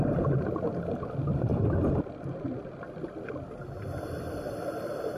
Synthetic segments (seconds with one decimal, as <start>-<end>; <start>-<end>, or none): none